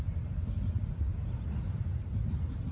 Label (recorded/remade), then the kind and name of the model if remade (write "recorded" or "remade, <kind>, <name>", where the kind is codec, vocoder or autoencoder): recorded